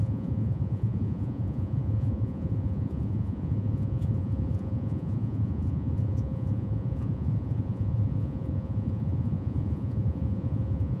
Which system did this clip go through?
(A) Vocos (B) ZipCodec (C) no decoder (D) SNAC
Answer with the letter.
A